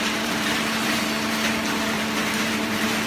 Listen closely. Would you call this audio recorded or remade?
remade